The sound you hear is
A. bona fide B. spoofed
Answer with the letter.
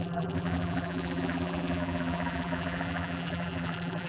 B